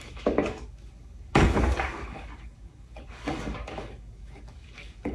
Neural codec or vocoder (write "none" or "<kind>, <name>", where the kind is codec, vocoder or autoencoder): codec, DAC